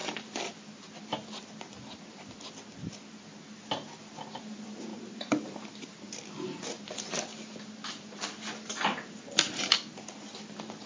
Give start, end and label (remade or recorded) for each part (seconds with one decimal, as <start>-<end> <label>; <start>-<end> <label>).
0.0-4.9 recorded; 4.9-5.7 remade; 5.7-10.9 recorded